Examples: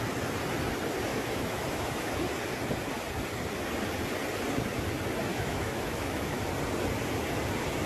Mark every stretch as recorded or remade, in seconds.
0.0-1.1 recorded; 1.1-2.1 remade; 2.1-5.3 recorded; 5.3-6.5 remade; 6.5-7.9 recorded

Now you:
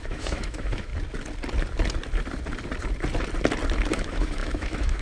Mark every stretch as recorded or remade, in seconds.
0.0-0.9 remade; 0.9-3.9 recorded; 3.9-5.0 remade

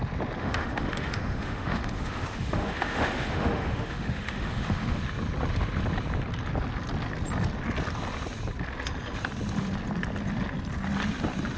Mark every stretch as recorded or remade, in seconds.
0.0-0.4 recorded; 0.4-5.0 remade; 5.0-11.6 recorded